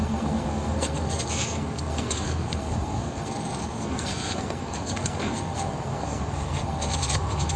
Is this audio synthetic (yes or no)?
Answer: yes